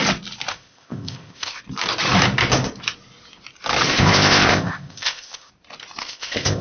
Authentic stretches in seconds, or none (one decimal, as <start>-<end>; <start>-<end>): 0.0-0.5; 1.6-3.9; 5.5-6.0